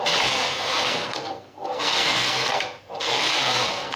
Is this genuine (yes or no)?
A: no